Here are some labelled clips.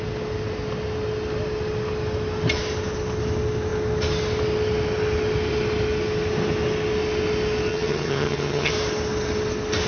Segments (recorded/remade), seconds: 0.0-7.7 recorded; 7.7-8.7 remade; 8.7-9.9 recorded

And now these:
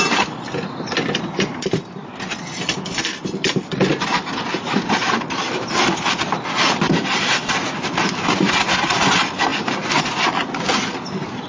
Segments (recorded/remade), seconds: 0.0-11.5 recorded

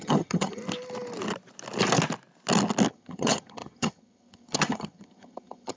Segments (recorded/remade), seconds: 0.0-0.6 remade; 0.6-2.9 recorded; 2.9-5.8 remade

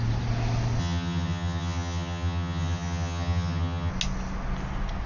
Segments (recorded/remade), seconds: 0.0-0.8 recorded; 0.8-3.9 remade; 3.9-5.1 recorded

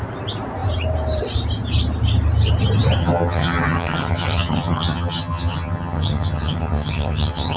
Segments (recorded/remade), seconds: 0.0-3.0 recorded; 3.0-7.6 remade

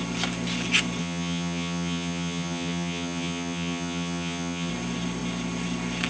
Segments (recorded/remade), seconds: 0.0-1.0 recorded; 1.0-4.7 remade; 4.7-6.1 recorded

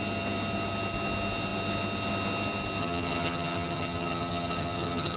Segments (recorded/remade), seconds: 0.0-2.8 recorded; 2.8-5.2 remade